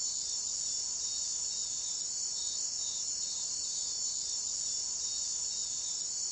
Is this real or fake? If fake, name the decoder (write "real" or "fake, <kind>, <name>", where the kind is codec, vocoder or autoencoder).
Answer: real